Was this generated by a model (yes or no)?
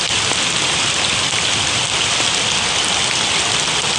no